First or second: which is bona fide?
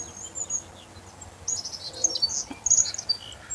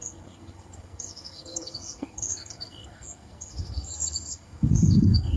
first